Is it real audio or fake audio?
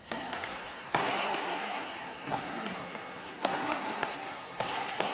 fake